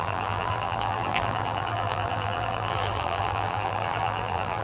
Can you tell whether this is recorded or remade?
remade